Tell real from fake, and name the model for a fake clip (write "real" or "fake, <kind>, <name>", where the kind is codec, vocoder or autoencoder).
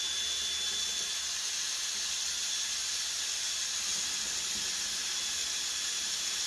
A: real